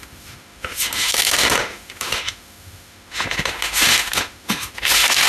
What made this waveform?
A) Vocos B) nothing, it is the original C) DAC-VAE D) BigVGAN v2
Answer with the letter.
C